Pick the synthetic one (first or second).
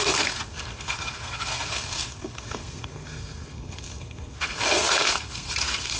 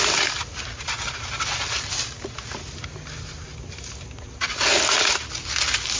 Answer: first